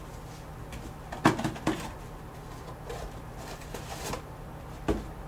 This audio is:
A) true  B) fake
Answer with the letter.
A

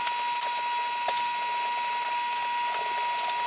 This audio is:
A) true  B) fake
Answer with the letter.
A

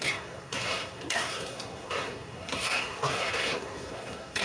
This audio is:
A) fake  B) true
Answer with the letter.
A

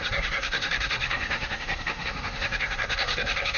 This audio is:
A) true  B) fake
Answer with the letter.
B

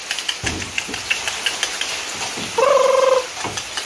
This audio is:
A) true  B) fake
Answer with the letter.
A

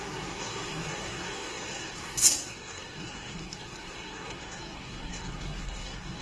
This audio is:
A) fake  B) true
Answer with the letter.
A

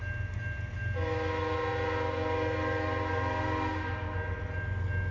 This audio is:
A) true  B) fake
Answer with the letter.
A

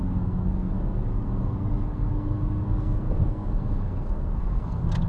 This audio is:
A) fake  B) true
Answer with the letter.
A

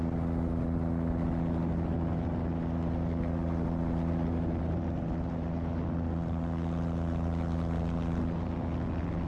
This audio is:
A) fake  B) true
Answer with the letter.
B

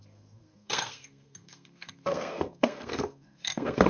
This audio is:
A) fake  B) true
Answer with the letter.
A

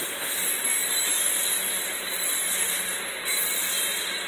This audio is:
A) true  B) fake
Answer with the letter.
A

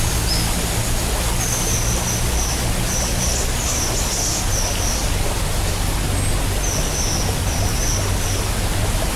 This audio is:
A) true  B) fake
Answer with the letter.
A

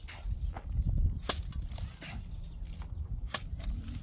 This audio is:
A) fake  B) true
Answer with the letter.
B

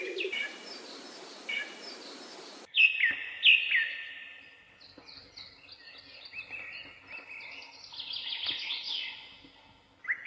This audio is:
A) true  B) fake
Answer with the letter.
A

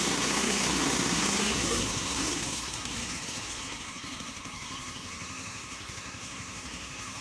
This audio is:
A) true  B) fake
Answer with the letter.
B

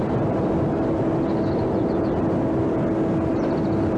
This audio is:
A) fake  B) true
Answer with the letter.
B